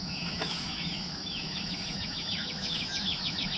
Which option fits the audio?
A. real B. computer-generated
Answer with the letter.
B